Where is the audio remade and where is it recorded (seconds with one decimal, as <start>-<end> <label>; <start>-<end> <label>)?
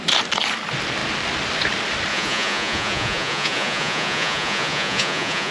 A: 0.0-2.1 recorded; 2.1-5.5 remade